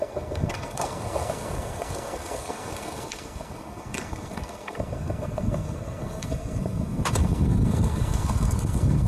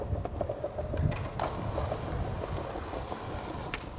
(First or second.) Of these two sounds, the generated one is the first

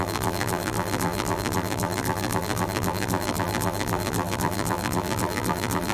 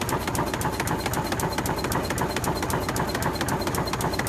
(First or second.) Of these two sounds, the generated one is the first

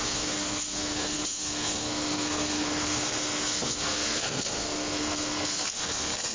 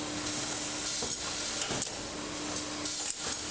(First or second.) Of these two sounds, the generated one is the first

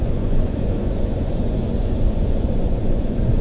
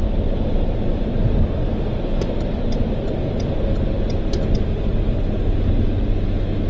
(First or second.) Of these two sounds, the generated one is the first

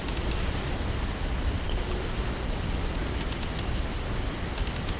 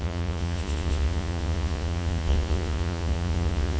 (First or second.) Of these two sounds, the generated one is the second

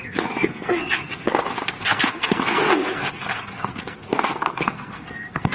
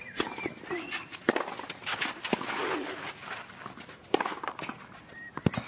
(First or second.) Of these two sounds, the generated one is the first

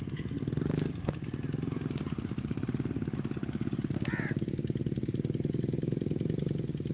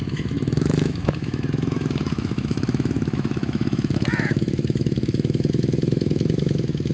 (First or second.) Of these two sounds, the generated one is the second